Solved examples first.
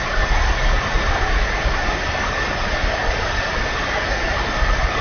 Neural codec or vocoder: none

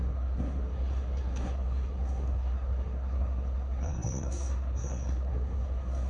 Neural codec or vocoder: codec, SNAC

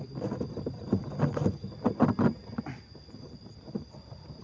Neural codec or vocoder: none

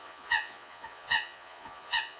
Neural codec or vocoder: vocoder, Vocos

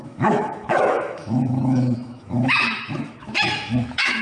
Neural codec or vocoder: autoencoder, DAC-VAE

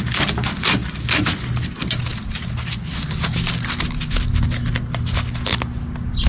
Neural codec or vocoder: none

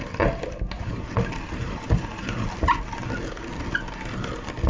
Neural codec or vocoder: none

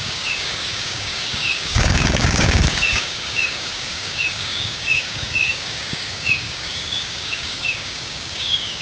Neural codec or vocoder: codec, DAC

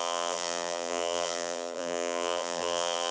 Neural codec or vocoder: vocoder, BigVGAN v2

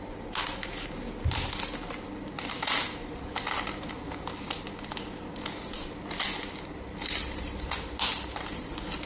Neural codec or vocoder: none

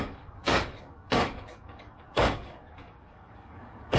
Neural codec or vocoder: codec, DAC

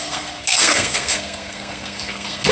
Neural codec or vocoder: codec, SNAC